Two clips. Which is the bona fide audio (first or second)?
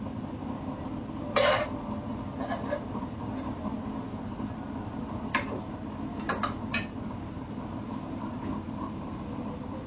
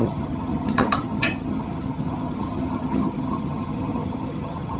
first